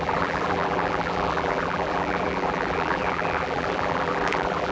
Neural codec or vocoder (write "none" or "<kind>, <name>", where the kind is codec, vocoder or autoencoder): vocoder, BigVGAN v2